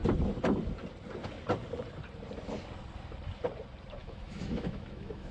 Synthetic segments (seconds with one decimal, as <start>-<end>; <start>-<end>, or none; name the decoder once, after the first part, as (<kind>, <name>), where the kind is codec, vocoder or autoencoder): 4.0-5.3 (autoencoder, DAC-VAE)